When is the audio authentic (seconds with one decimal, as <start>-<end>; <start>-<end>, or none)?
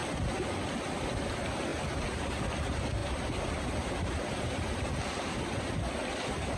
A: 0.0-1.7; 2.4-3.0; 5.8-6.6